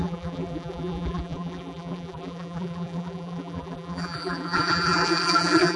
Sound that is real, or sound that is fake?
fake